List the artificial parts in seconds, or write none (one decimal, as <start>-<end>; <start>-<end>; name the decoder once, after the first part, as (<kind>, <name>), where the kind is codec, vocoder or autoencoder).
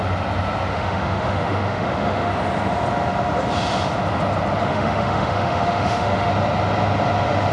0.7-2.3 (autoencoder, DAC-VAE); 4.6-6.3